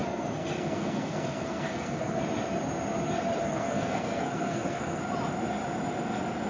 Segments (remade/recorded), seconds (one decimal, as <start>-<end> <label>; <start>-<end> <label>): 0.0-2.2 remade; 2.2-3.4 recorded; 3.4-5.0 remade; 5.0-6.5 recorded